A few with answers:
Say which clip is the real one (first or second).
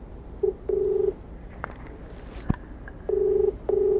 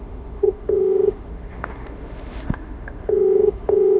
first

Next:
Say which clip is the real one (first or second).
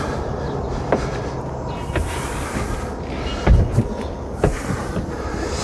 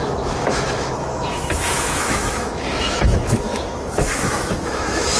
first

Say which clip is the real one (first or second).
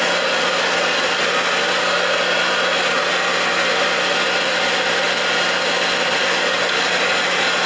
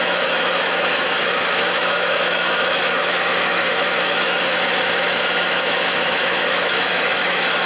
first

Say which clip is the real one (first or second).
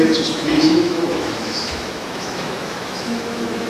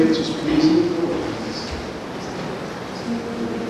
second